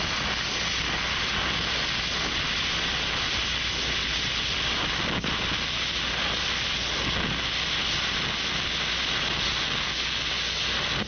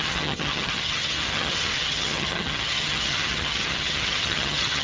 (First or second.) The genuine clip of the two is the first